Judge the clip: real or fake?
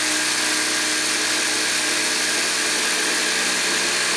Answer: real